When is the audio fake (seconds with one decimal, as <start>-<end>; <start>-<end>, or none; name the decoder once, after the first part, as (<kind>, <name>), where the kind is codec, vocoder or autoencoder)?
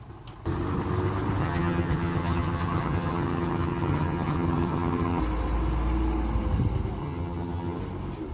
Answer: 1.4-5.2 (vocoder, HiFi-GAN); 7.0-7.8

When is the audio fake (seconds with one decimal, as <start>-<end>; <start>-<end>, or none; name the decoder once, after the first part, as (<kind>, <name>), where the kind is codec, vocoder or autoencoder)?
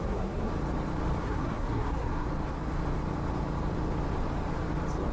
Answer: 0.0-0.5 (codec, SNAC); 1.2-2.3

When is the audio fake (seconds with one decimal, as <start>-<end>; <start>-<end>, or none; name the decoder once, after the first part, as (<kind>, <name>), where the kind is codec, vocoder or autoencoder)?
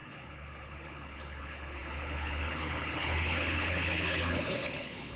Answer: 0.0-5.2 (codec, HILCodec)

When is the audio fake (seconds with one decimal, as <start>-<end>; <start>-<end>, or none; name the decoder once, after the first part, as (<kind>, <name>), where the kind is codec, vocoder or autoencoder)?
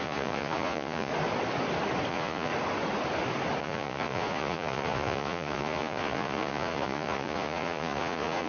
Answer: 0.0-1.1 (vocoder, Vocos); 2.1-2.5; 3.6-8.5